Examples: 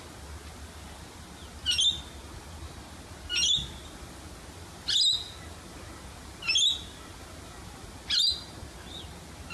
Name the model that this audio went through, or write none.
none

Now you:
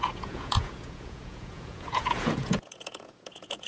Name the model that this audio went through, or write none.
vocoder, Vocos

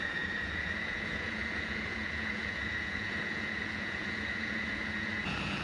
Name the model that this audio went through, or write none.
vocoder, Vocos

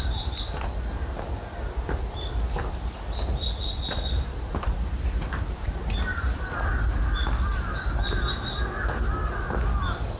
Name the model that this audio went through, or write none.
none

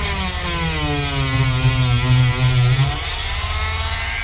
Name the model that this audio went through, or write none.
none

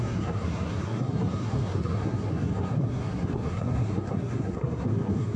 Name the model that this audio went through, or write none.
codec, SNAC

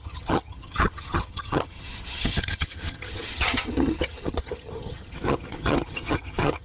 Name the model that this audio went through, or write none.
vocoder, HiFi-GAN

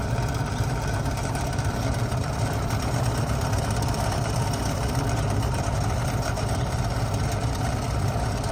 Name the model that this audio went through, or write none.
vocoder, BigVGAN v2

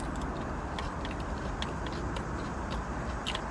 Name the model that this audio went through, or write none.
none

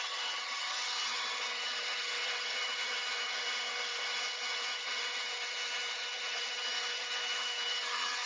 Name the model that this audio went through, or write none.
vocoder, HiFi-GAN